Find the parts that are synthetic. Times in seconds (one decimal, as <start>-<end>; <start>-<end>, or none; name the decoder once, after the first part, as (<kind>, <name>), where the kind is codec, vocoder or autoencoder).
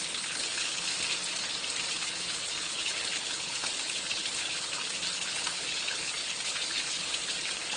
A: 0.0-0.9 (codec, HILCodec); 1.9-7.8